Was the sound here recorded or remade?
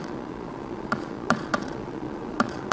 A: remade